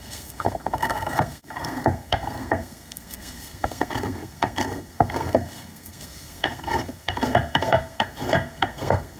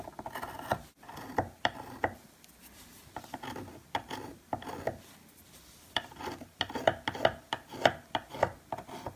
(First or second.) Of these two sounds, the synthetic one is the first